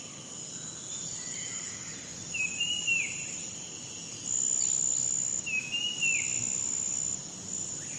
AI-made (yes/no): no